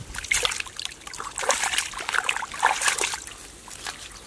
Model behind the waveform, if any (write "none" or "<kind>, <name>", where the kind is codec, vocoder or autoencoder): none